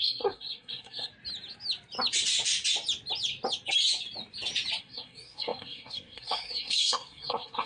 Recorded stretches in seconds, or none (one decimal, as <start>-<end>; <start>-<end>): 1.1-4.8